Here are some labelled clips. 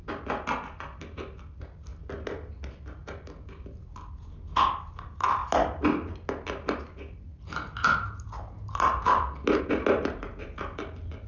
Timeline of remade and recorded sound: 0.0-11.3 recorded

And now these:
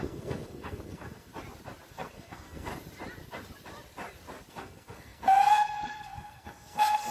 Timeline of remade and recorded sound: 0.0-1.3 remade; 1.3-1.9 recorded; 1.9-2.7 remade; 2.7-4.5 recorded; 4.5-7.1 remade

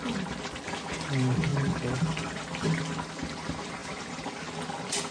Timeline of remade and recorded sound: 0.0-1.5 recorded; 1.5-3.1 remade; 3.1-3.8 recorded; 3.8-4.4 remade; 4.4-5.1 recorded